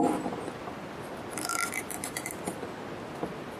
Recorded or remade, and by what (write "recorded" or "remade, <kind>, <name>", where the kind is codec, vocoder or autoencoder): recorded